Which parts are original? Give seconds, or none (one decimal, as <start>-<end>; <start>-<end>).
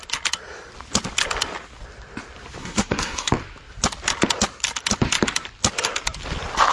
0.0-2.6; 3.3-6.7